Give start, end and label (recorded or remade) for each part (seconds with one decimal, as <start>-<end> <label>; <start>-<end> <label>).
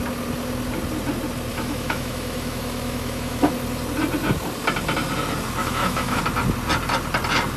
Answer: 0.0-1.5 recorded; 1.5-3.5 remade; 3.5-5.6 recorded; 5.6-6.2 remade; 6.2-7.6 recorded